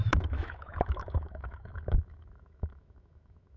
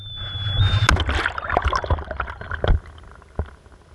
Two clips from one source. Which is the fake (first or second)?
first